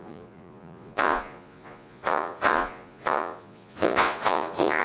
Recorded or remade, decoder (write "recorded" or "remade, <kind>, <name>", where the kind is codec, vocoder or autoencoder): remade, vocoder, Vocos